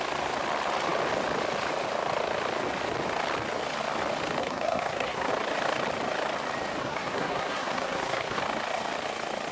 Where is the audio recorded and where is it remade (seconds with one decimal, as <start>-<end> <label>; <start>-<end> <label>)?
0.0-4.4 recorded; 4.4-5.3 remade; 5.3-6.8 recorded; 6.8-8.4 remade; 8.4-9.5 recorded